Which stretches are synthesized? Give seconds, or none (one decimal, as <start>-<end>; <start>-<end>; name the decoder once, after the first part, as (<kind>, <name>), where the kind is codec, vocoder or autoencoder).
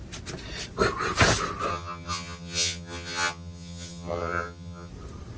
1.7-4.9 (vocoder, HiFi-GAN)